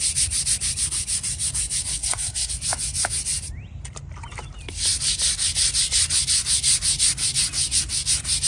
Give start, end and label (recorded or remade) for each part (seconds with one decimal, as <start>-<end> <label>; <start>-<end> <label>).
0.0-2.0 recorded; 2.0-2.5 remade; 2.5-8.5 recorded